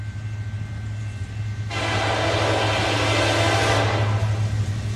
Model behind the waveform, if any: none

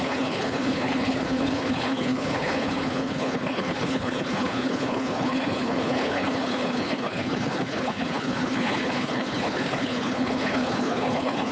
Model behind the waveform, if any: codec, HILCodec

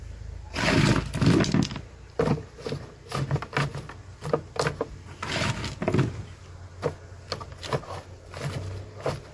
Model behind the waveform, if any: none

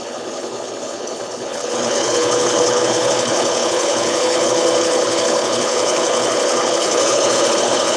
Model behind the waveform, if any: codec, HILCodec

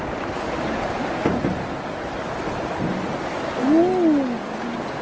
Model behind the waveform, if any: none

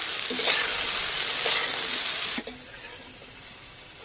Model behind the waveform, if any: none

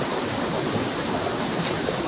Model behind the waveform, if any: none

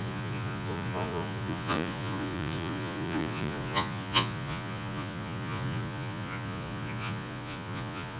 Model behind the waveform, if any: vocoder, Vocos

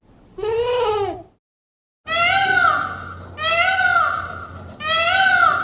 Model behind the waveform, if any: none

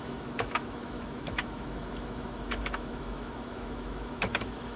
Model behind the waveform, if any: autoencoder, DAC-VAE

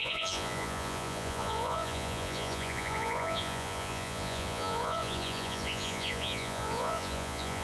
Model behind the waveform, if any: vocoder, Vocos